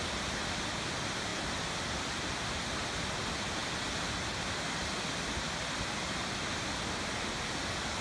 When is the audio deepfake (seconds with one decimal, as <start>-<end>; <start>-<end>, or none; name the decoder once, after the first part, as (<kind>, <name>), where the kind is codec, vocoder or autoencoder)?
none